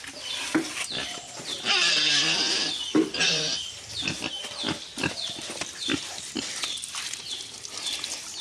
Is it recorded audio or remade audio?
recorded